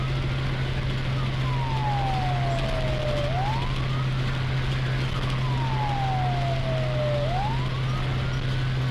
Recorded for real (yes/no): yes